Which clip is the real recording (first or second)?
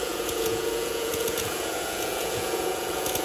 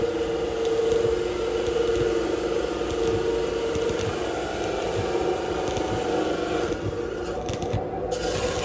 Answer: second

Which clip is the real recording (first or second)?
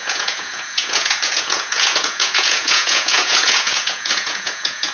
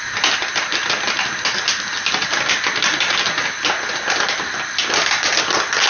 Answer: second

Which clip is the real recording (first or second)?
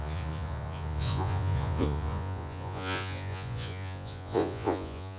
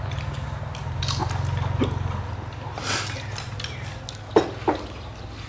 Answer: second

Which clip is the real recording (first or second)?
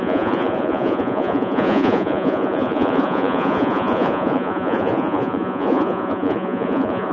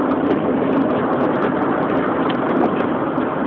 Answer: second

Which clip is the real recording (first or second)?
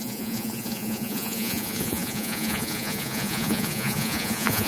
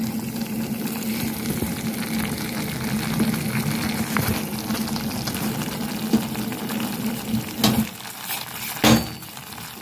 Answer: second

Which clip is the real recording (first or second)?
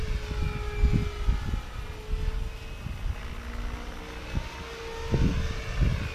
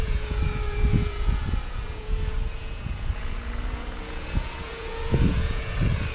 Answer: first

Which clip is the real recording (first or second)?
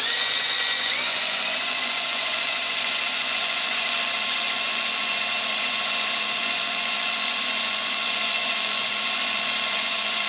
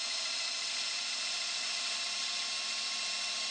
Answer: second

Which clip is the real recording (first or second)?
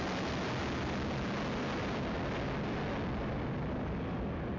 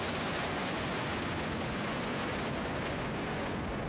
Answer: first